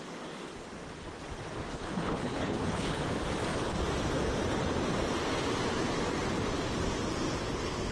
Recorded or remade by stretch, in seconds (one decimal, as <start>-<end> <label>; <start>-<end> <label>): 0.0-1.7 recorded; 1.7-3.0 remade; 3.0-7.9 recorded